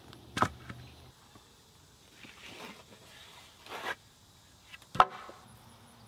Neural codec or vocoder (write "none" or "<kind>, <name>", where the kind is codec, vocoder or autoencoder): none